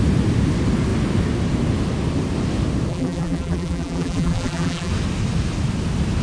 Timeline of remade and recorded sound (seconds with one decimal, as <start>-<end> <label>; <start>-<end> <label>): 0.0-2.9 recorded; 2.9-4.9 remade; 4.9-6.2 recorded